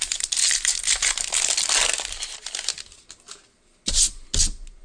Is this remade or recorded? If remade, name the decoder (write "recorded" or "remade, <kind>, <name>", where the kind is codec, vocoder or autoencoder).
recorded